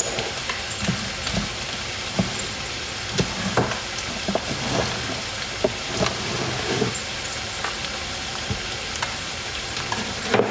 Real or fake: real